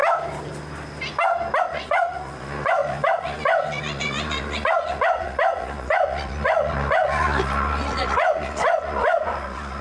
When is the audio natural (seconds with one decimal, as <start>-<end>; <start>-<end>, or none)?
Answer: 0.0-1.6